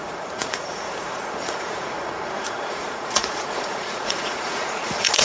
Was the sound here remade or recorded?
remade